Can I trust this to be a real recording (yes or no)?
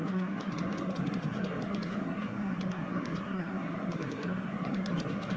no